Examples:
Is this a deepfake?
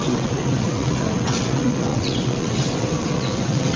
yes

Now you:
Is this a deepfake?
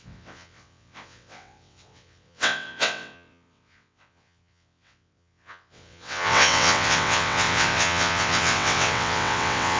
yes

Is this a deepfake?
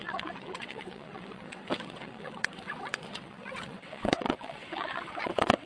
yes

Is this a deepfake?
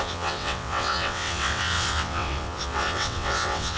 yes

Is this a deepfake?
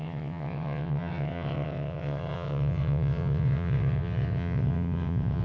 yes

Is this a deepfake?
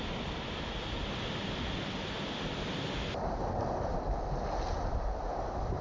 no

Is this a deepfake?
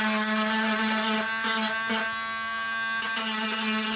no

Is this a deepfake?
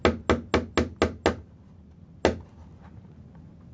no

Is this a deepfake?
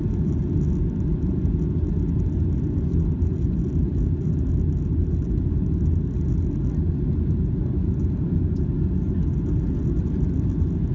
no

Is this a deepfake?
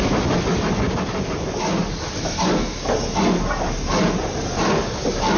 no